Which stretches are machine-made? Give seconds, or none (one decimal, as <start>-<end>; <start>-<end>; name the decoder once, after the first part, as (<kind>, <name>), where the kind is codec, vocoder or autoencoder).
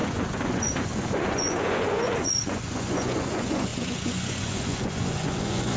0.0-5.8 (vocoder, Vocos)